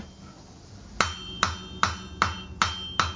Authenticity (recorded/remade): recorded